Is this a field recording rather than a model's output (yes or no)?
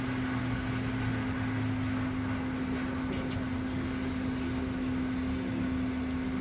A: yes